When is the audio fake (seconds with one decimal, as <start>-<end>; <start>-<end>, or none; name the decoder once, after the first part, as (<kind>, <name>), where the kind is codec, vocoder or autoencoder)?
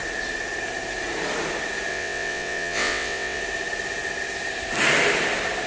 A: 1.9-3.4 (vocoder, WaveNeXt)